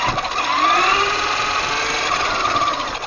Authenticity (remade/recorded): recorded